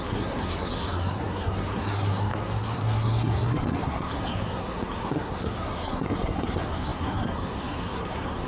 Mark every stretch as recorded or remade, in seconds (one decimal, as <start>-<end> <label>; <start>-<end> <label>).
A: 0.0-8.5 remade